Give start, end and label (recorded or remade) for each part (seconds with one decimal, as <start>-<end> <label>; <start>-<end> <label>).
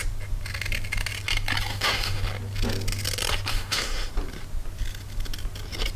0.0-1.7 recorded; 1.7-2.2 remade; 2.2-3.5 recorded; 3.5-4.1 remade; 4.1-6.0 recorded